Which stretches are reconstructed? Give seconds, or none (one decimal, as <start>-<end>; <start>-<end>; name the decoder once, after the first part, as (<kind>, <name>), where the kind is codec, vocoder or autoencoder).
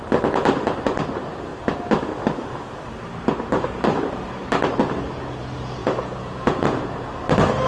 5.8-7.1 (vocoder, Vocos)